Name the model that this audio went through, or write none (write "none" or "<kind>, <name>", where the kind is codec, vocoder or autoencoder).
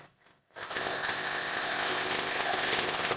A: codec, ZipCodec